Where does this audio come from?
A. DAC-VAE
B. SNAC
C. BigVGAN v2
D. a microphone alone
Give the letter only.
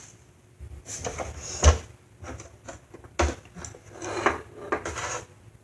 D